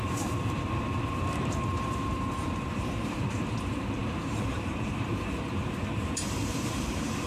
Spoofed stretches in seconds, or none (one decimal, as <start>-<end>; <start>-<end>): 0.0-7.3